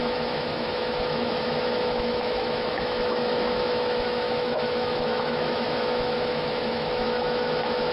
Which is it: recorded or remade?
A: remade